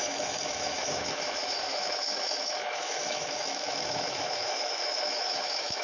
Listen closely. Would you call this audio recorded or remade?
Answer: remade